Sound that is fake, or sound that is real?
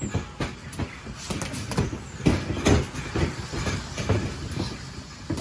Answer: real